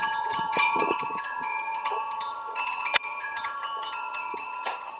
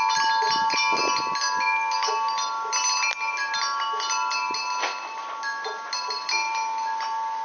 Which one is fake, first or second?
first